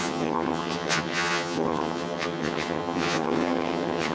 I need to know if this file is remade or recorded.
remade